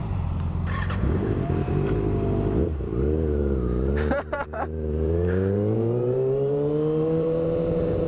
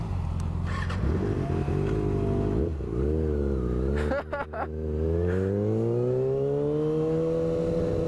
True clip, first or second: second